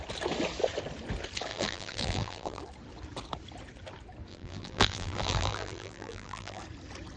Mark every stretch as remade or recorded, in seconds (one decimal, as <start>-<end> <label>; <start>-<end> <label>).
0.0-1.5 recorded; 1.5-2.6 remade; 2.6-4.3 recorded; 4.3-6.6 remade; 6.6-7.2 recorded